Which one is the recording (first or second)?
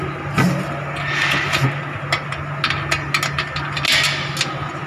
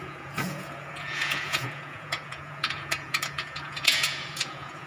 first